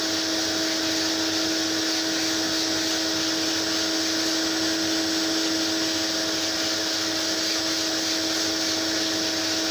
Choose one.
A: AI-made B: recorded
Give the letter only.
B